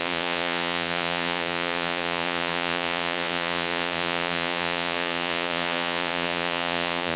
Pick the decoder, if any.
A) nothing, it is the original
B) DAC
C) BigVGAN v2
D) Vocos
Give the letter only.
D